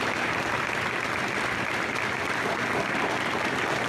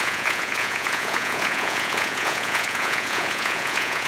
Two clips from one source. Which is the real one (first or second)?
first